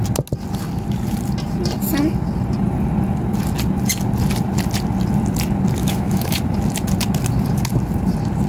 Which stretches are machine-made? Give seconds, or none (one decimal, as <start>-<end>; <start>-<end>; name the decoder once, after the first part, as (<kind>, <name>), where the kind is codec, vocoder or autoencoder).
5.8-6.4 (autoencoder, DAC-VAE)